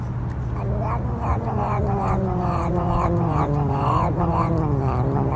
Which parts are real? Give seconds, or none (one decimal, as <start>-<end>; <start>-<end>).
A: 0.0-1.3; 4.5-5.4